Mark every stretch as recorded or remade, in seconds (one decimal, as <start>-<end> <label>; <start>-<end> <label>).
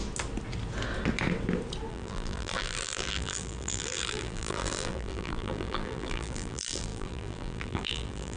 0.0-1.9 recorded; 1.9-8.4 remade